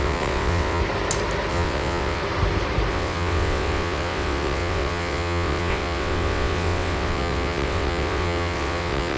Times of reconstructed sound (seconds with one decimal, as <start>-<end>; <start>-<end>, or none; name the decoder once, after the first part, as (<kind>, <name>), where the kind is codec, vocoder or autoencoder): 0.0-0.8 (vocoder, WaveNeXt); 1.5-2.2; 2.9-9.2